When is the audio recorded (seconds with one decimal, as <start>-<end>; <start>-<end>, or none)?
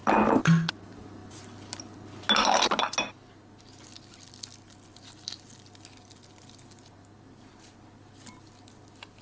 0.0-9.2